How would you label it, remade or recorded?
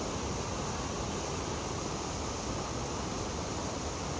recorded